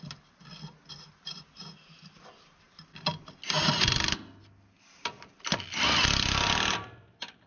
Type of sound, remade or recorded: recorded